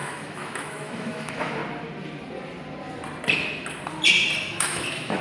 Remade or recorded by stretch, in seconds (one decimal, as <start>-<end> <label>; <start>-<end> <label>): 0.0-1.6 remade; 1.6-4.4 recorded; 4.4-5.2 remade